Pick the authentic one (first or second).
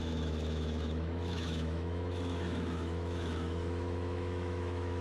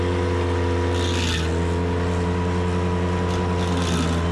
second